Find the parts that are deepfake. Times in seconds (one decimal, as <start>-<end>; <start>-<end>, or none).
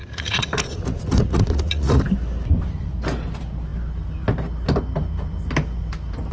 0.0-2.0